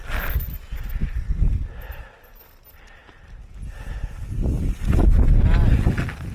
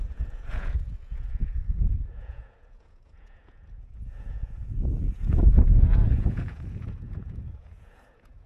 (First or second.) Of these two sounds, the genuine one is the first